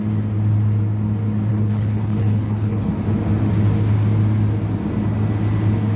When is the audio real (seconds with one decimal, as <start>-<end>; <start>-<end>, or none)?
0.0-1.5; 2.9-6.0